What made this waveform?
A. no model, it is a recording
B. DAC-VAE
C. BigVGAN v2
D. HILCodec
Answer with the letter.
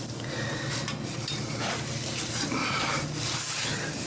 C